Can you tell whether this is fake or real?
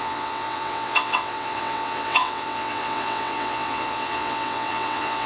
fake